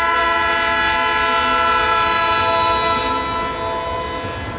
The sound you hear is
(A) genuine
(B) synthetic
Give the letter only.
A